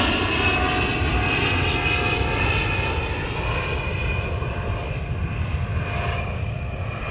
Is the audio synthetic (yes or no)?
no